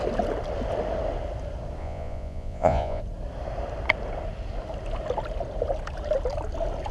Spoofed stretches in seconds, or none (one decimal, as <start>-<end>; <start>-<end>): 1.8-3.0